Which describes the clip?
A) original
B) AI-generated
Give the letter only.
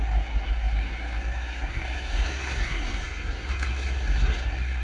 B